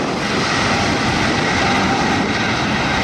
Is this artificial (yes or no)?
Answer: no